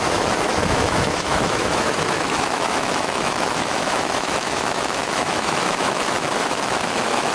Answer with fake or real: fake